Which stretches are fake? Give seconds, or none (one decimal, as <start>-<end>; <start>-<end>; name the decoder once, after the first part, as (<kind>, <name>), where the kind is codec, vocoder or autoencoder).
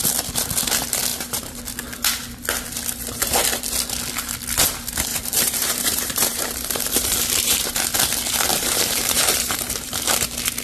1.1-1.6 (vocoder, BigVGAN v2); 5.1-7.8; 8.5-9.9